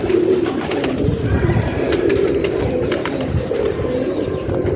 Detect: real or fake fake